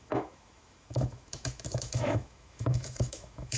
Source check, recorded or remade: remade